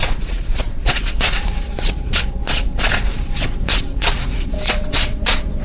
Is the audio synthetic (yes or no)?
yes